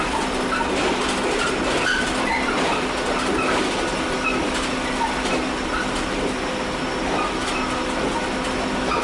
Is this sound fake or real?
real